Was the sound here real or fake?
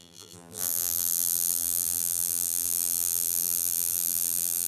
fake